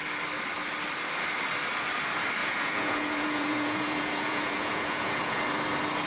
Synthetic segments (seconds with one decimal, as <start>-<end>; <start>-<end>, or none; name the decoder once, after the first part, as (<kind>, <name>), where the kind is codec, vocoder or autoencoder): 2.4-5.4 (vocoder, Vocos)